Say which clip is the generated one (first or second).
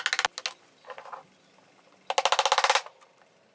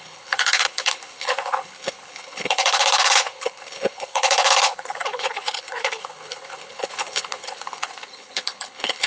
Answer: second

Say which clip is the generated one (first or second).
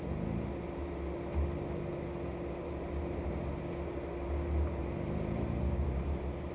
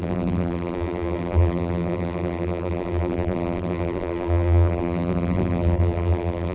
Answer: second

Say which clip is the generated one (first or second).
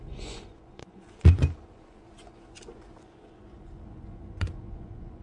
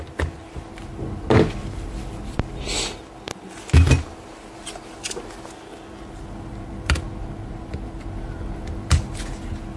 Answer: first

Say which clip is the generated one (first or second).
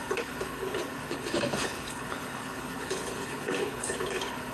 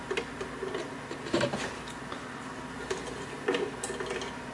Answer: first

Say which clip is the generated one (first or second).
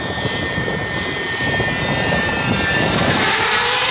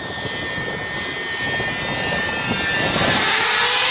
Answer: first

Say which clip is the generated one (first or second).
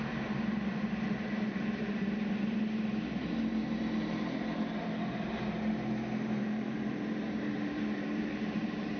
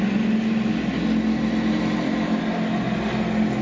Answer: first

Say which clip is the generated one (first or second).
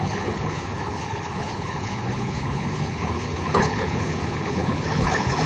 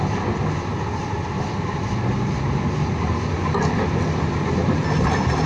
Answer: first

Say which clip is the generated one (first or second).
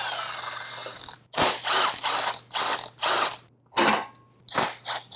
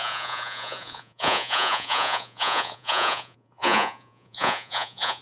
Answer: second